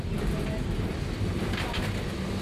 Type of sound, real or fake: real